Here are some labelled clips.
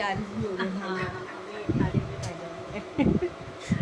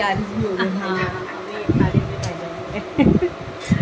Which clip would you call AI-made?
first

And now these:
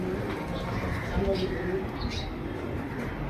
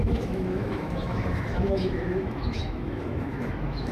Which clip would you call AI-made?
second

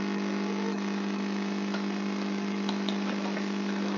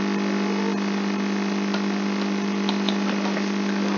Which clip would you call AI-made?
first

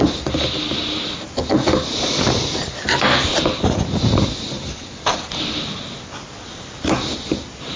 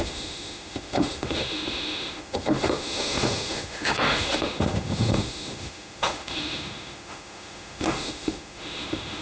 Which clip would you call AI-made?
second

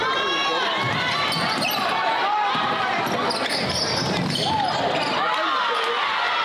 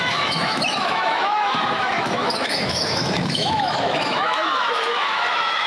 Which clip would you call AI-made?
second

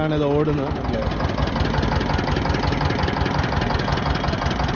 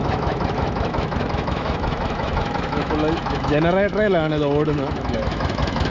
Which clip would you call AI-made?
second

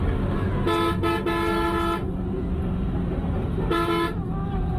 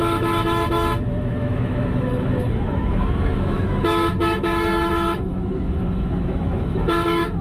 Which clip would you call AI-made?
second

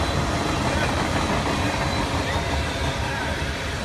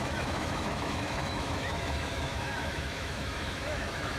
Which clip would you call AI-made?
second